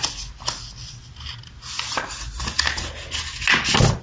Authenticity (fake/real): real